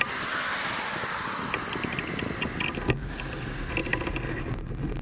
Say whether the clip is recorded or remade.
recorded